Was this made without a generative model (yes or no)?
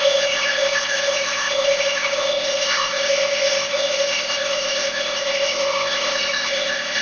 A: no